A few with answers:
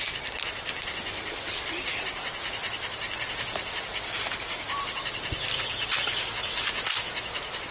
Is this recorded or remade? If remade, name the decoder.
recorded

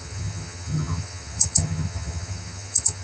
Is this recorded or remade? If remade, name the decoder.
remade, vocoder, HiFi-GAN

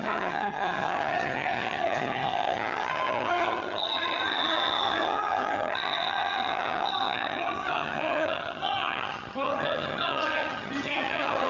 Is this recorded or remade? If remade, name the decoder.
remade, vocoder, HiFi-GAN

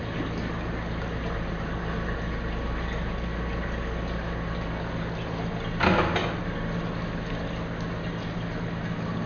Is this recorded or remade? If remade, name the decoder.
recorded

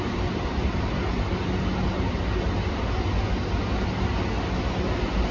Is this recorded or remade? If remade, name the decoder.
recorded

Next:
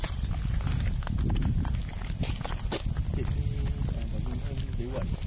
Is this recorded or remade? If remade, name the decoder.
recorded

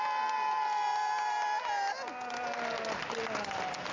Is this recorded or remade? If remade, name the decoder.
recorded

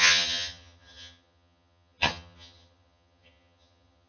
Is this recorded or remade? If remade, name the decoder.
remade, vocoder, HiFi-GAN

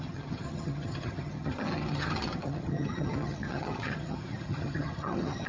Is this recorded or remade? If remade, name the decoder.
remade, vocoder, HiFi-GAN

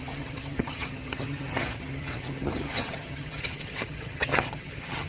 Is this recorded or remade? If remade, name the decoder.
remade, vocoder, HiFi-GAN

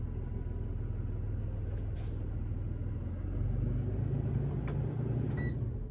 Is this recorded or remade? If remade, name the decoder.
recorded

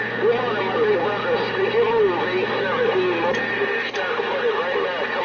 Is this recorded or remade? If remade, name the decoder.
recorded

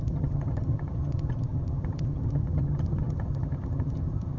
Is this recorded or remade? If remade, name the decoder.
remade, vocoder, HiFi-GAN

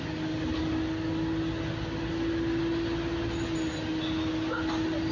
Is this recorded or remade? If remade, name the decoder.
recorded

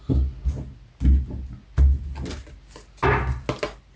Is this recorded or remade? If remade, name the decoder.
recorded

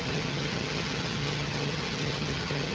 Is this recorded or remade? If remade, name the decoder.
remade, vocoder, HiFi-GAN